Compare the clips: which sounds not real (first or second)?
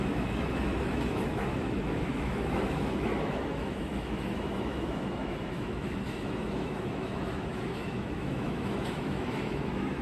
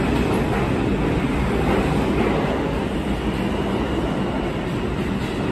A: first